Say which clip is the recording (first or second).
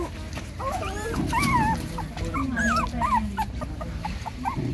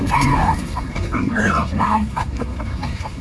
first